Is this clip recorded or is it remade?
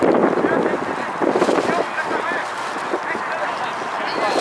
recorded